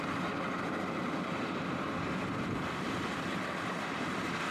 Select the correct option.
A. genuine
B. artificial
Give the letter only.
B